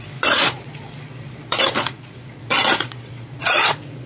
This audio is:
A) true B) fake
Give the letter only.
B